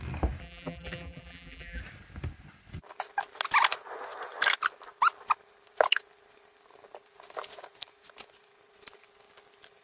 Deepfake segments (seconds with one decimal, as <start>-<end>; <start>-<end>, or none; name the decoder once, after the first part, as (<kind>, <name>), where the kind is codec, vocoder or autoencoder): 0.4-1.8 (vocoder, BigVGAN v2)